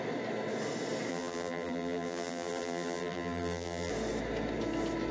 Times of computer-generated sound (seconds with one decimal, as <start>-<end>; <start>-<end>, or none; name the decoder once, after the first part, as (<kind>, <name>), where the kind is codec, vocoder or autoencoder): 1.1-3.9 (vocoder, BigVGAN v2)